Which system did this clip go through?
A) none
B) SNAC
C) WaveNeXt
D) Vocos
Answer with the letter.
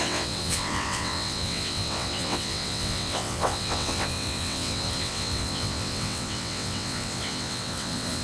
C